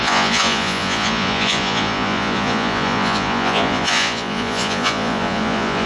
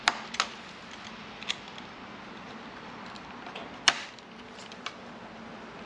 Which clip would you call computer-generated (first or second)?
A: first